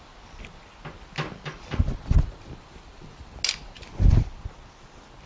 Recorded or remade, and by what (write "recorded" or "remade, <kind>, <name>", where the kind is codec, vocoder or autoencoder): recorded